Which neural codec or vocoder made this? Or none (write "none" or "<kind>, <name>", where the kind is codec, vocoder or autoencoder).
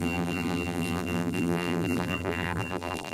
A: vocoder, BigVGAN v2